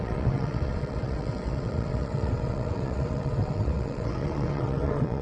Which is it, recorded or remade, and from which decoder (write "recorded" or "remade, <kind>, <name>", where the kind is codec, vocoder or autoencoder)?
remade, vocoder, WaveNeXt